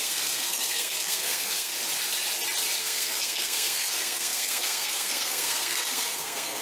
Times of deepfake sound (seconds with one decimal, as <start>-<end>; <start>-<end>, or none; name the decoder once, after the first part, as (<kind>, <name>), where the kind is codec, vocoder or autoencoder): 0.0-1.7 (codec, SNAC); 2.8-6.6